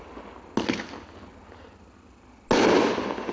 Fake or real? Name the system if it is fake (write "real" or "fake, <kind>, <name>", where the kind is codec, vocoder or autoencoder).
real